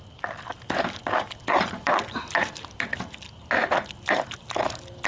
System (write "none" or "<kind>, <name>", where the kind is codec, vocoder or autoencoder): none